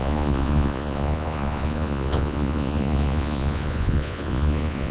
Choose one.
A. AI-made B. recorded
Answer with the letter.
A